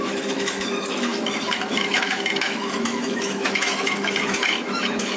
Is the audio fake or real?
fake